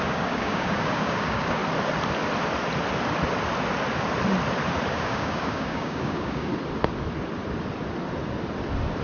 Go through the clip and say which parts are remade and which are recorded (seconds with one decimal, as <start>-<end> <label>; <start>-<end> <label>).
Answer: 0.0-1.6 remade; 1.6-4.9 recorded; 4.9-6.5 remade; 6.5-9.0 recorded